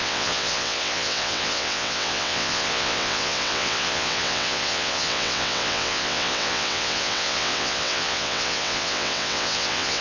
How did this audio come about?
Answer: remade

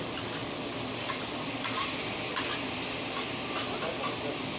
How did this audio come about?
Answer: recorded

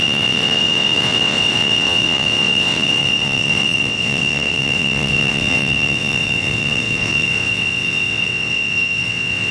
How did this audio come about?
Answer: remade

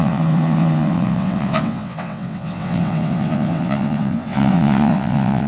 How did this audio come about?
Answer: remade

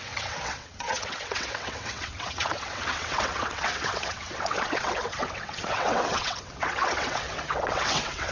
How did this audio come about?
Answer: remade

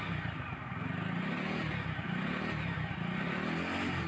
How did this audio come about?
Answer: recorded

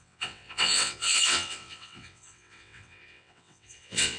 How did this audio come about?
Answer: remade